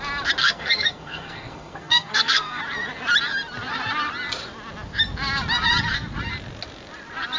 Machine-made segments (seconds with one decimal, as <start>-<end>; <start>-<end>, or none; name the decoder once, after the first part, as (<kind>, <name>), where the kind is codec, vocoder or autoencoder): 0.4-2.6 (codec, SNAC)